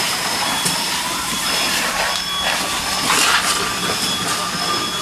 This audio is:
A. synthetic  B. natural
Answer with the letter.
B